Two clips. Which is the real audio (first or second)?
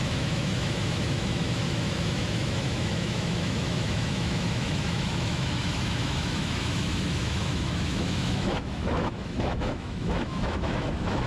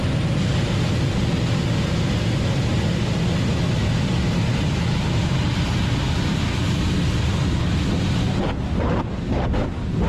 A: second